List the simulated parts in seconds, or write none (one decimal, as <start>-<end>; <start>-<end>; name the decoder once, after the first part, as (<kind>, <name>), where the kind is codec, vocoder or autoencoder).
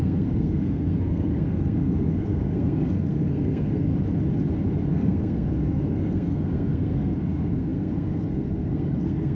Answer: 0.0-3.9 (codec, SNAC); 4.9-9.3